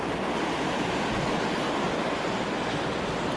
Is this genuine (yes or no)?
yes